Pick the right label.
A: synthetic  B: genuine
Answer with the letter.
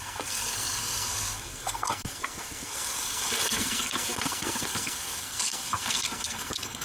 A